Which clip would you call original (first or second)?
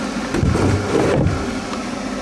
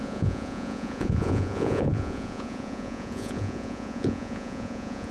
first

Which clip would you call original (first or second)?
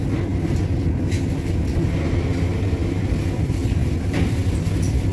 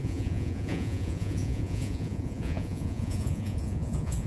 first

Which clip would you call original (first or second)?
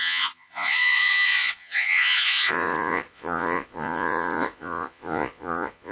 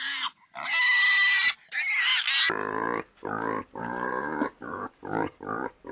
second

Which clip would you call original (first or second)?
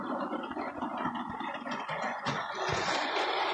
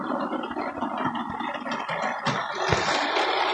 second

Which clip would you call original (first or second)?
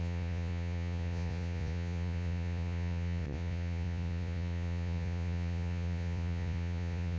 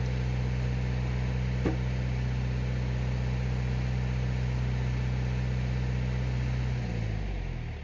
second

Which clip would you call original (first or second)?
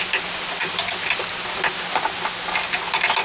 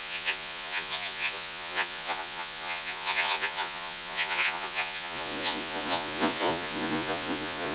first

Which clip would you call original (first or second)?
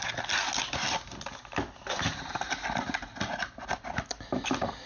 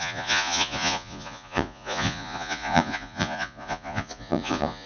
first